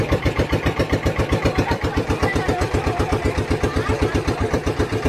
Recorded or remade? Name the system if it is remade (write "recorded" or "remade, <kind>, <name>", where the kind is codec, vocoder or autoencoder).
remade, vocoder, BigVGAN v2